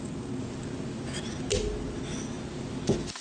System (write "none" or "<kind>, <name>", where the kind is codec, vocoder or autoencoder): none